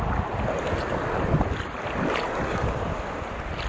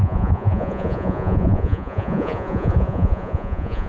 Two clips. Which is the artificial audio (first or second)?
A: second